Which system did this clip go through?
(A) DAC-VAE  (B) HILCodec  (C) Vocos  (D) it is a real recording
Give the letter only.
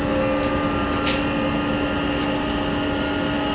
D